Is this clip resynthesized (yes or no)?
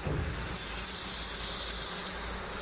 no